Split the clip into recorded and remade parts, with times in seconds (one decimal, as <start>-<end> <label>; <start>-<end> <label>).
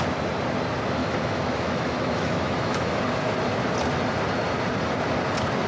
0.0-1.0 recorded; 1.0-3.0 remade; 3.0-5.7 recorded